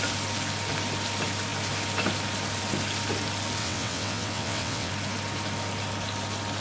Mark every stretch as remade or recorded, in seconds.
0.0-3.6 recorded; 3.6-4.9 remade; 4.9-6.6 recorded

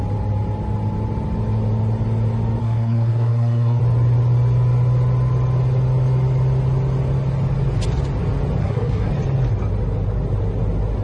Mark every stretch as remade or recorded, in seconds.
0.0-2.6 recorded; 2.6-3.8 remade; 3.8-8.6 recorded; 8.6-9.1 remade; 9.1-11.0 recorded

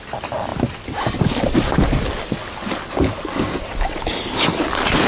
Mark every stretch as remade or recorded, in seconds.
0.0-5.1 recorded

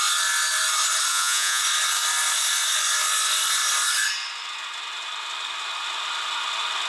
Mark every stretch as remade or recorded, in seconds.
0.0-1.1 recorded; 1.1-1.6 remade; 1.6-6.9 recorded

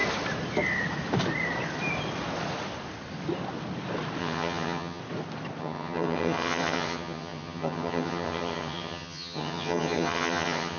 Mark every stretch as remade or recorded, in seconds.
0.0-4.2 recorded; 4.2-5.0 remade; 5.0-5.6 recorded; 5.6-10.8 remade

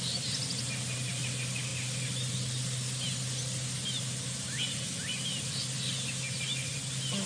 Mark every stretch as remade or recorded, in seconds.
0.0-7.3 recorded

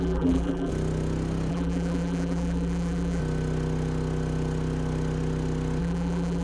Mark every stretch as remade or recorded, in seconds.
0.0-0.7 remade; 0.7-1.5 recorded; 1.5-3.2 remade; 3.2-5.8 recorded; 5.8-6.4 remade